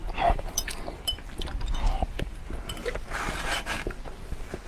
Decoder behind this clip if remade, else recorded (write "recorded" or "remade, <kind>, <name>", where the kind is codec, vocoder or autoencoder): recorded